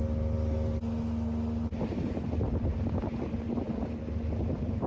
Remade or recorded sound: recorded